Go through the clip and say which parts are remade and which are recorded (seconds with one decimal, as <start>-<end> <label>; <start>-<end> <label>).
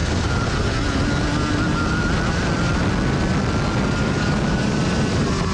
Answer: 0.0-4.0 recorded; 4.0-4.8 remade; 4.8-5.5 recorded